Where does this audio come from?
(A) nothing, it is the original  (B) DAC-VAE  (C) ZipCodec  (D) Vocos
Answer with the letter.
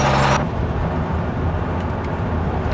A